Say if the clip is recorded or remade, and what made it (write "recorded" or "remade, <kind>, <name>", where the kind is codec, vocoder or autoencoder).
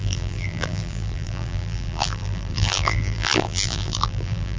remade, vocoder, BigVGAN v2